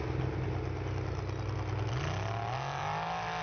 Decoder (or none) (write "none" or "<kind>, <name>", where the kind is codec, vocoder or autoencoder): none